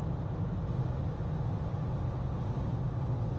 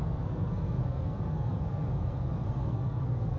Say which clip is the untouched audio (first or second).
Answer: first